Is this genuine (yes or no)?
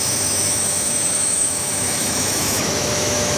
no